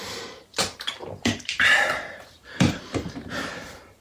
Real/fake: fake